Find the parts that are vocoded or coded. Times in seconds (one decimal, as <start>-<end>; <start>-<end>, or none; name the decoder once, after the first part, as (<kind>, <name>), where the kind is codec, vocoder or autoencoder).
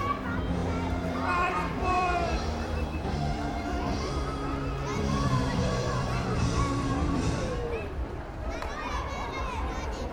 0.6-4.1 (vocoder, BigVGAN v2); 4.9-10.1